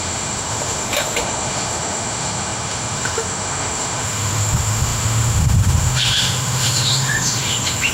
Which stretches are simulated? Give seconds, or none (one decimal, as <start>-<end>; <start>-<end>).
0.0-7.9

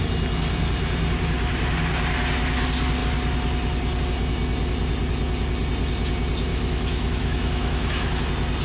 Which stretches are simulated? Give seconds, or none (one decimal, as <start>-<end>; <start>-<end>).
6.5-8.2

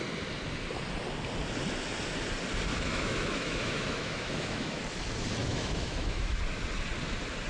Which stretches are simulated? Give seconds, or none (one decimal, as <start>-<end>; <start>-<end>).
2.7-4.8; 5.4-6.4

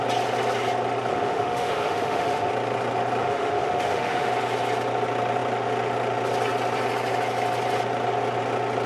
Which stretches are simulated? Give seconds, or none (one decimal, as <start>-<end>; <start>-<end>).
1.1-2.5; 3.2-4.3

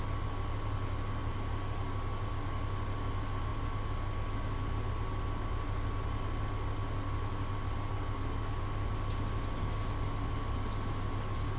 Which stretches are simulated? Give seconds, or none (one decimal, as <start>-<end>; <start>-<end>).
none

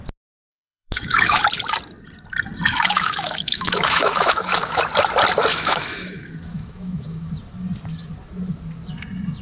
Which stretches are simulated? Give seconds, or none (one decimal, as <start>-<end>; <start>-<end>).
0.5-1.4; 2.7-4.8; 5.5-7.3

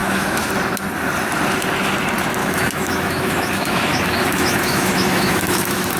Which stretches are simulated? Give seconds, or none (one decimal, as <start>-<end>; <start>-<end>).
0.0-0.5; 2.4-6.0

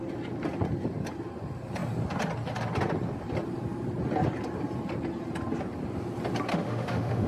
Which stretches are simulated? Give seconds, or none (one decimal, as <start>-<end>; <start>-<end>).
6.5-7.3